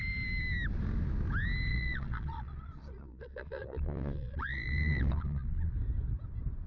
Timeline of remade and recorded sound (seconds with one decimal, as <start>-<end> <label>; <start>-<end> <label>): 0.0-1.7 recorded; 1.7-5.7 remade; 5.7-6.7 recorded